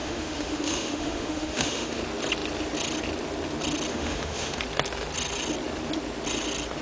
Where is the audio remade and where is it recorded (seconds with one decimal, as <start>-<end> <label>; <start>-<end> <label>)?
0.0-2.0 remade; 2.0-3.9 recorded; 3.9-4.6 remade; 4.6-6.8 recorded